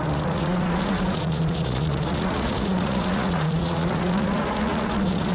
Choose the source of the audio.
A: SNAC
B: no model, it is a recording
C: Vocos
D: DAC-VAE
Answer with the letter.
C